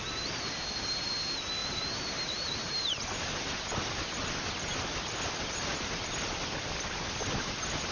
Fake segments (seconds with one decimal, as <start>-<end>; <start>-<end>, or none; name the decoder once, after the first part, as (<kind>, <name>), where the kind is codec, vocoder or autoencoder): 1.6-3.0 (vocoder, BigVGAN v2)